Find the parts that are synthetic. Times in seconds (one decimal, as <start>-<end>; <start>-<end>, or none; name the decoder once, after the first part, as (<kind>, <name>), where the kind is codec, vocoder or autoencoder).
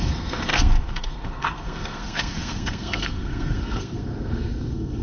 0.0-5.0 (codec, SNAC)